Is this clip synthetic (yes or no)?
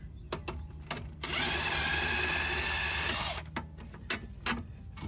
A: no